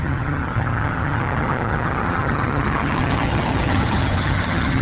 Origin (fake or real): fake